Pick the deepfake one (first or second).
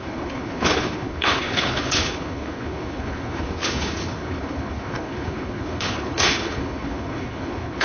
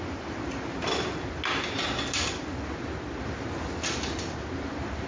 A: first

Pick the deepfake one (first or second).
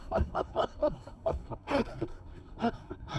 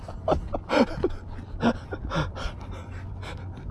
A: first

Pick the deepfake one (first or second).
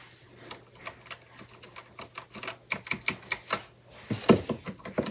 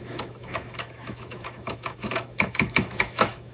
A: second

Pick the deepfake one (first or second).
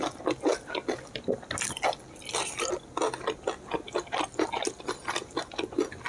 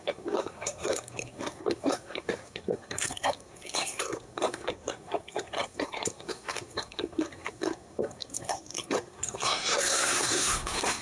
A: second